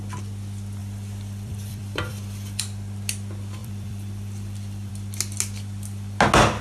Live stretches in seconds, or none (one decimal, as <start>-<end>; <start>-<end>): 0.0-0.8; 2.6-3.6; 4.9-6.6